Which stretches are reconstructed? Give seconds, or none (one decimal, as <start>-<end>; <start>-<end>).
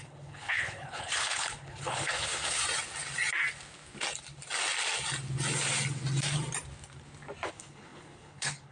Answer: 0.0-2.6; 7.5-8.7